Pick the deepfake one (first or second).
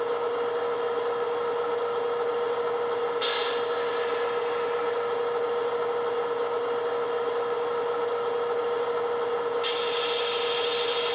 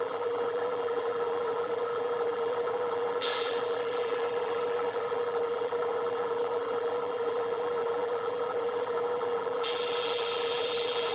second